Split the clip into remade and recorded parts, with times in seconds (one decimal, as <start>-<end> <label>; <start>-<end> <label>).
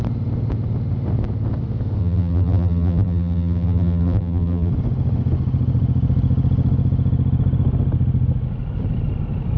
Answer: 0.0-2.0 recorded; 2.0-4.7 remade; 4.7-9.6 recorded